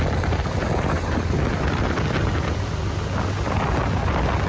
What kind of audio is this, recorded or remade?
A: recorded